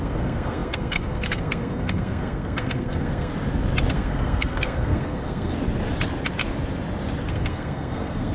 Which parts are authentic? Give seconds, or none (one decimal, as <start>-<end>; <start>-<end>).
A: 3.3-3.9; 5.5-7.3